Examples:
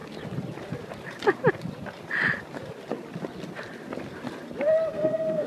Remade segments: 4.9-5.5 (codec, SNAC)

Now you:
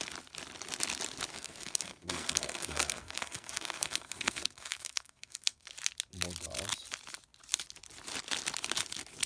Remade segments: 1.3-5.7 (codec, SNAC)

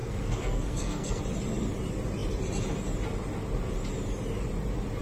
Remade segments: 0.0-1.2 (codec, SNAC)

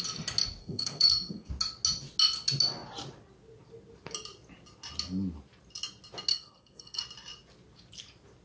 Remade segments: 0.6-1.5 (codec, SNAC); 6.3-7.0

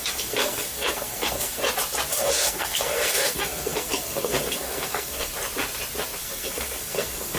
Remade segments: 0.0-1.6 (codec, SNAC); 2.1-5.3; 6.2-7.4

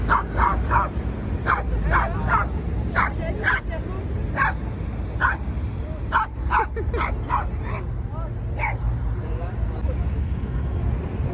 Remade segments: 10.2-10.8 (codec, SNAC)